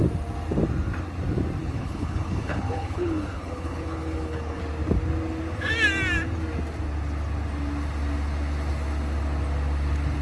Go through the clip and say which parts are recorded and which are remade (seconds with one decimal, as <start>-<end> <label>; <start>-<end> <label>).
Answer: 0.0-1.6 recorded; 1.6-4.6 remade; 4.6-10.2 recorded